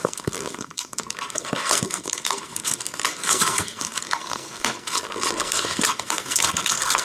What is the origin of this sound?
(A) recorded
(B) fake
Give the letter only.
B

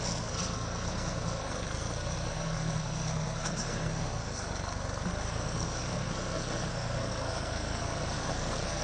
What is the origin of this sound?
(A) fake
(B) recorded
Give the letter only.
A